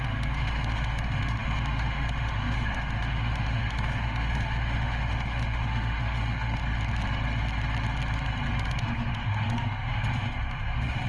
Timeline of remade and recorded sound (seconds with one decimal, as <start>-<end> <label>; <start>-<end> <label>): 0.0-6.6 remade; 6.6-8.5 recorded; 8.5-11.1 remade